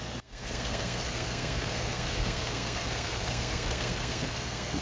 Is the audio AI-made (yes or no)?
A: yes